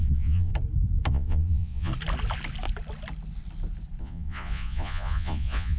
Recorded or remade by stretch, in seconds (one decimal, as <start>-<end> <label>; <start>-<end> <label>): 0.0-0.5 remade; 0.5-1.1 recorded; 1.1-1.9 remade; 1.9-4.0 recorded; 4.0-5.8 remade